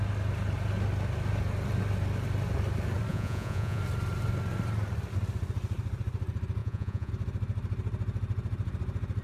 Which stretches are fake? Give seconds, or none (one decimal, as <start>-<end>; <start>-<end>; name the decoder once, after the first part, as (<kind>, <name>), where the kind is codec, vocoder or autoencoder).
3.1-3.8 (vocoder, Vocos); 6.6-7.1